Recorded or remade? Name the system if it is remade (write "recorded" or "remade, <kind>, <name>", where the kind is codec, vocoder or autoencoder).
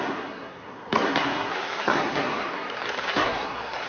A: remade, codec, SNAC